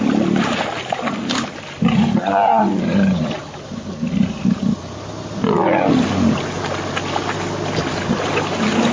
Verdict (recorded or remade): recorded